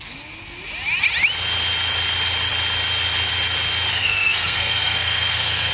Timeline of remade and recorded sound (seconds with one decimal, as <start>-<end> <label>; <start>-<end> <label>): 0.0-3.9 recorded; 3.9-5.7 remade